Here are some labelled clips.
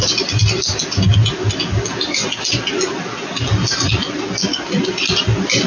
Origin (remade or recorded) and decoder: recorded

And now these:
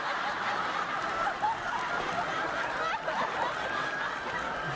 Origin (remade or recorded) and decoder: recorded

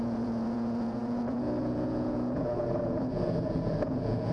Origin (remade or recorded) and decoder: remade, vocoder, Vocos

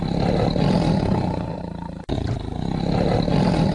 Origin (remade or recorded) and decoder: recorded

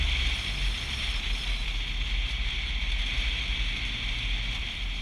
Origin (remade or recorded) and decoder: recorded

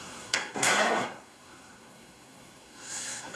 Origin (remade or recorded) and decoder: remade, codec, SNAC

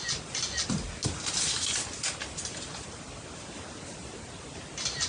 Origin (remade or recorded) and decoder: recorded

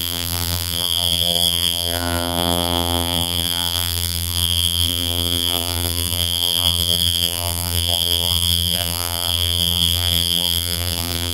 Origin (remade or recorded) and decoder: remade, vocoder, BigVGAN v2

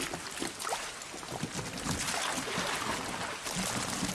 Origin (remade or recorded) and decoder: recorded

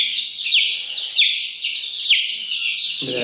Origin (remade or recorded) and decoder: recorded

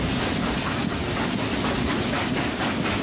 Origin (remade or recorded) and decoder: recorded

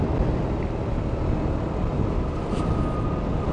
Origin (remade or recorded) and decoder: recorded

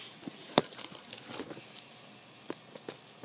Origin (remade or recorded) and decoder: recorded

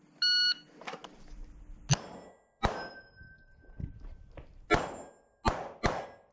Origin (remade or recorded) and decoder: recorded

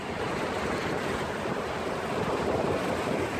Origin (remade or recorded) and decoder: recorded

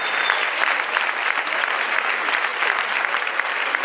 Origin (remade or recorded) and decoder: recorded